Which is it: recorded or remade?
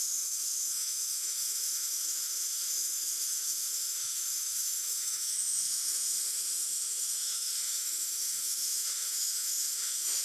remade